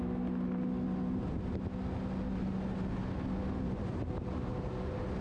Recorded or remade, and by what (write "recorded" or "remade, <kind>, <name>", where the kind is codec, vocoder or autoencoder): recorded